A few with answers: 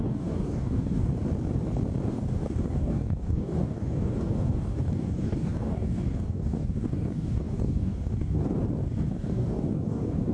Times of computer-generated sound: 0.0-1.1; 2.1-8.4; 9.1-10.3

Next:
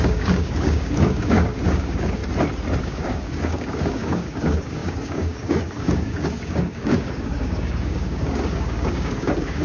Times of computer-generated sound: 0.0-2.2; 2.8-9.6

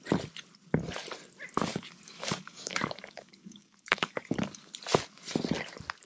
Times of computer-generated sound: 1.7-4.7